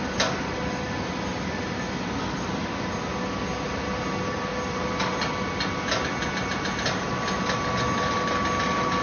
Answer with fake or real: real